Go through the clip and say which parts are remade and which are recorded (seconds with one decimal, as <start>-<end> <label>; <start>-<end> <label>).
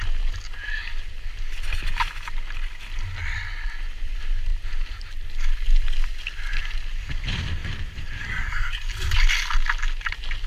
0.0-7.6 recorded; 7.6-8.2 remade; 8.2-10.5 recorded